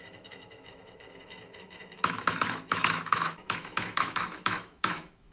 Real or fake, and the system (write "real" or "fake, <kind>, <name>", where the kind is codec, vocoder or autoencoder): fake, autoencoder, DAC-VAE